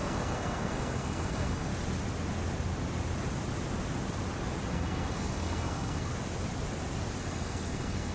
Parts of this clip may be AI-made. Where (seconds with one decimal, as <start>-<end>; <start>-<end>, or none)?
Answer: 0.0-1.7; 4.7-6.1; 7.2-8.1